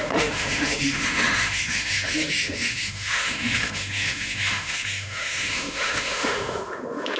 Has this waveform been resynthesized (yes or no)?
yes